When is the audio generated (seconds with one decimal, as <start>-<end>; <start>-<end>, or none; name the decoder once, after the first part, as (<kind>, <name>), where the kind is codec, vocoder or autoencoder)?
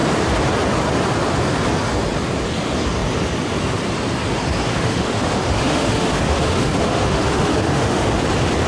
4.7-8.1 (autoencoder, DAC-VAE)